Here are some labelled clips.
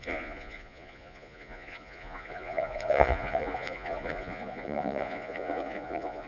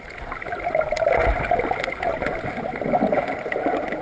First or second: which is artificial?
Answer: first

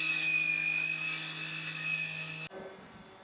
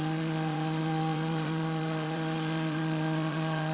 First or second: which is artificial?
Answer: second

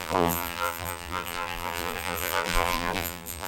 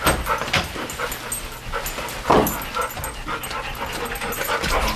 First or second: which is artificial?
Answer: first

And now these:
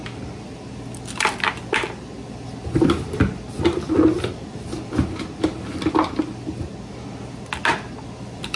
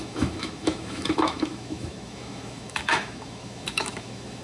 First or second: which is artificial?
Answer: second